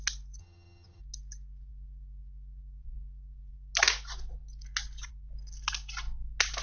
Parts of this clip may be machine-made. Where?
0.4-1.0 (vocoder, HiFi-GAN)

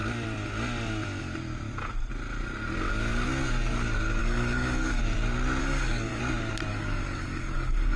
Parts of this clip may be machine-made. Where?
4.2-5.0 (codec, DAC); 5.6-6.2; 6.7-8.0

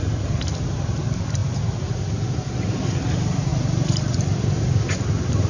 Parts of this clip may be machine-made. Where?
0.0-1.4 (vocoder, BigVGAN v2); 2.1-5.5

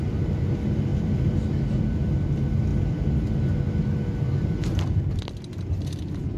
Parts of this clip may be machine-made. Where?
none

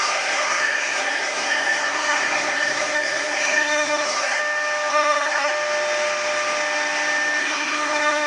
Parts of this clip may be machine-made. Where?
0.0-4.4 (codec, SNAC); 4.9-5.5; 7.4-8.3